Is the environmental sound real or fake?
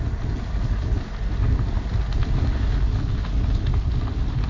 real